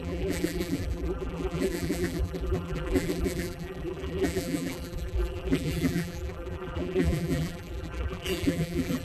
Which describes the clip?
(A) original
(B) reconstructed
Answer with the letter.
B